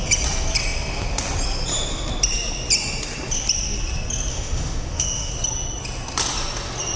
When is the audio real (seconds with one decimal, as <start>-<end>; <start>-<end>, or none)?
0.0-4.3; 5.3-7.0